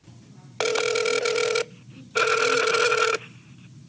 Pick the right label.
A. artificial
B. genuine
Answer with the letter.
B